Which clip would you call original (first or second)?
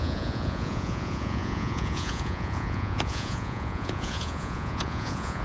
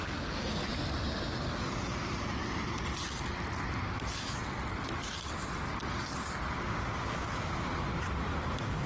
second